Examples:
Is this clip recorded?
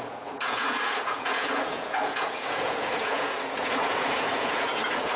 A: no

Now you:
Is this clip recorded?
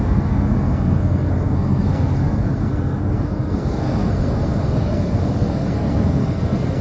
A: no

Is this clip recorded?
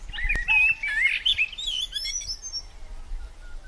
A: yes